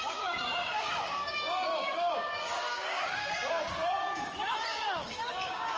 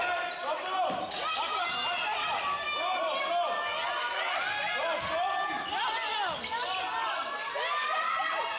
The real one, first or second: second